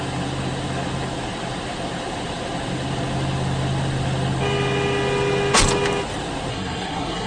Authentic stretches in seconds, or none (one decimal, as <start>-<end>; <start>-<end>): 0.0-6.5